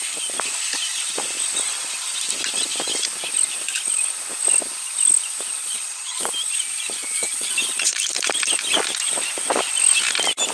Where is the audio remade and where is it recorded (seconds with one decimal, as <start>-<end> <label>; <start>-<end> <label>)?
0.0-5.6 recorded; 5.6-6.3 remade; 6.3-7.0 recorded; 7.0-8.0 remade; 8.0-10.5 recorded